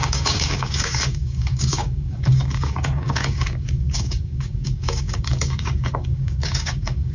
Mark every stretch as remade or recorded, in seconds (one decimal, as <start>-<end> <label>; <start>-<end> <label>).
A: 0.0-7.1 remade